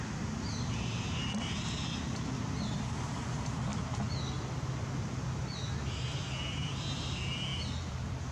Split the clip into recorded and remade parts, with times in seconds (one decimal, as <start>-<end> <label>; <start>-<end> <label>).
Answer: 0.0-8.3 recorded